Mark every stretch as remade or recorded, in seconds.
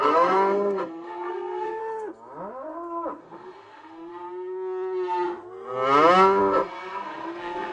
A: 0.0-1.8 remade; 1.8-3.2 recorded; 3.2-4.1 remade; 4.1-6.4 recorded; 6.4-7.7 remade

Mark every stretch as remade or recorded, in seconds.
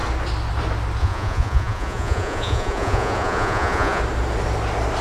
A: 0.0-1.0 recorded; 1.0-4.0 remade; 4.0-5.0 recorded